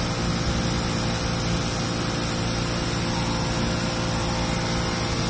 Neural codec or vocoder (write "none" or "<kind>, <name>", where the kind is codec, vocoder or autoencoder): none